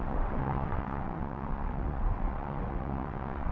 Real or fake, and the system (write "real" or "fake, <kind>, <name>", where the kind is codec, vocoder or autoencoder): fake, vocoder, WaveNeXt